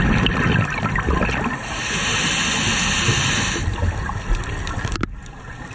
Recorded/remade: recorded